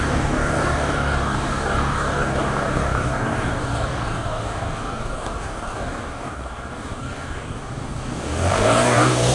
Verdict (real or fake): fake